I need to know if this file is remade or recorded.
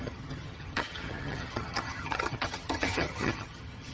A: remade